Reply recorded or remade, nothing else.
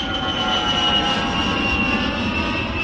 recorded